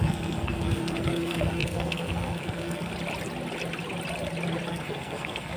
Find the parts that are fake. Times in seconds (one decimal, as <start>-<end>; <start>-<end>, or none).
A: 0.0-2.9; 4.7-5.6